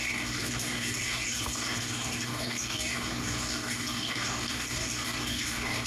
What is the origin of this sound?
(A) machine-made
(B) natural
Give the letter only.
A